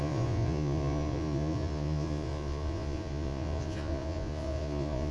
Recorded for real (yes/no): no